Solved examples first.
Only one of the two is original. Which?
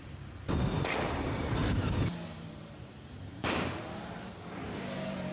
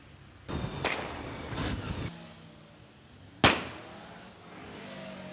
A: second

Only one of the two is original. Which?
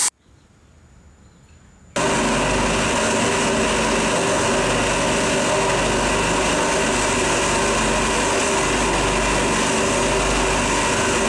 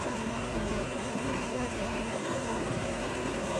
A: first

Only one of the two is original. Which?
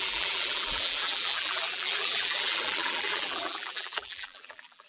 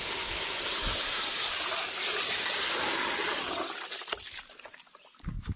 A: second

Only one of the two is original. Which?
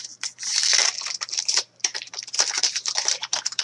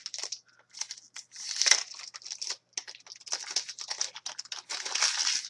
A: second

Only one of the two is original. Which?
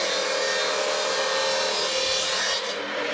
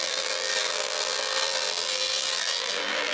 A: first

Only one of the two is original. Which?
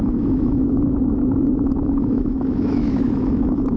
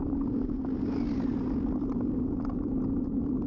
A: second